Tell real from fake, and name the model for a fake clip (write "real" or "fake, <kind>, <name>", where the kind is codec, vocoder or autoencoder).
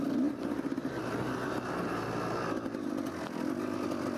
real